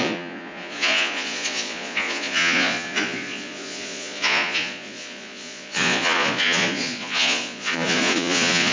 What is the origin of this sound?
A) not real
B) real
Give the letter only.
A